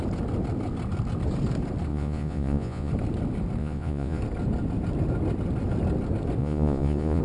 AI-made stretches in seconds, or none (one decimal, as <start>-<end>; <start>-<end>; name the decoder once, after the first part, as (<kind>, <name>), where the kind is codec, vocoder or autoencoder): 1.9-2.9 (vocoder, Vocos); 3.6-4.2; 6.4-7.2